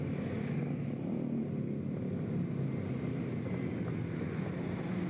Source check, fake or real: real